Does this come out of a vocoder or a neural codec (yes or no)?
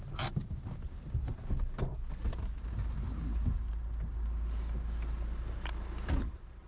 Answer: no